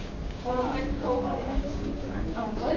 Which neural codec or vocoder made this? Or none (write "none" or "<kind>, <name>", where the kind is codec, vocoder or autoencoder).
codec, DAC